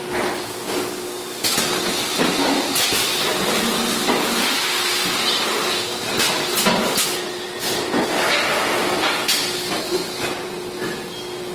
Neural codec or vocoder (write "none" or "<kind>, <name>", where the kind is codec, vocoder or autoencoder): none